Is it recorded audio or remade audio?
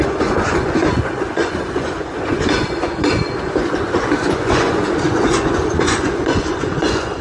remade